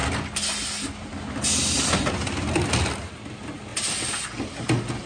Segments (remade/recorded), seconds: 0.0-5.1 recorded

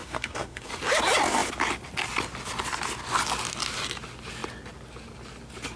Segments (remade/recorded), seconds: 0.0-0.7 remade; 0.7-5.8 recorded

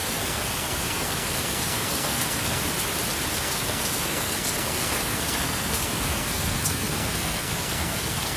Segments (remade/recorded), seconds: 0.0-2.6 remade; 2.6-3.3 recorded; 3.3-8.4 remade